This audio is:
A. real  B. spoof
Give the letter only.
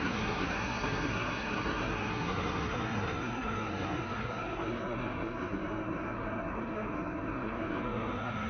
B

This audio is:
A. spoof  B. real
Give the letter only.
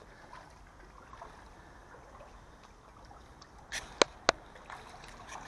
B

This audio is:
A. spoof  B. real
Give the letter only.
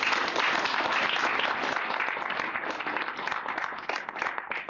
B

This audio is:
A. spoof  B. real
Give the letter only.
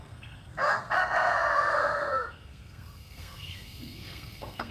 A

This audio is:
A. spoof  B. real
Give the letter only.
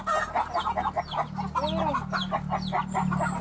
B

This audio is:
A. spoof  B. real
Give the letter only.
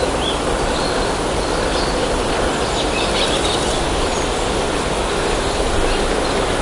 B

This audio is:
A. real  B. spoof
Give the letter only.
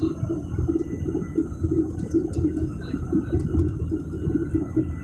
A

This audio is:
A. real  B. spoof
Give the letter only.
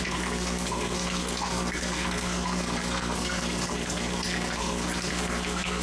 B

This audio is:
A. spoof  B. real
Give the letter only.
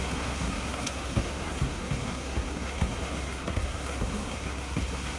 A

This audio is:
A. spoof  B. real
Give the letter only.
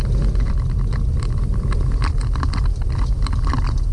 B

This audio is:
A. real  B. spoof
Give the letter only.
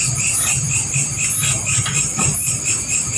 A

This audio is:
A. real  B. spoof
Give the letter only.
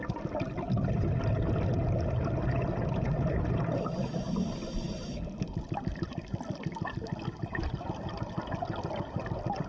A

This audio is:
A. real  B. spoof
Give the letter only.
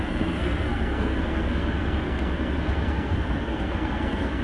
B